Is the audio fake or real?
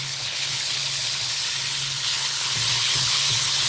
fake